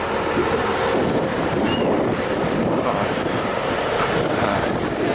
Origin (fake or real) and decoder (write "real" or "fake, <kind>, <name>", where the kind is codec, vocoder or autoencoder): real